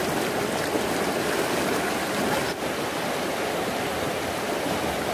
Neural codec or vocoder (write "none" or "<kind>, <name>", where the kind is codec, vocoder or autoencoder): none